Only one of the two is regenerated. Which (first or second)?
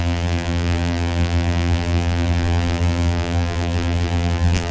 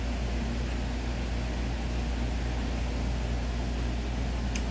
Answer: first